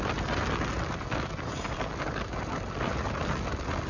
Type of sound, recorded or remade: recorded